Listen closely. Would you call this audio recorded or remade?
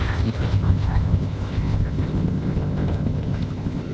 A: remade